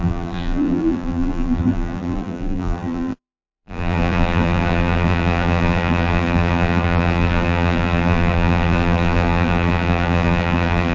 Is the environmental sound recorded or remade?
remade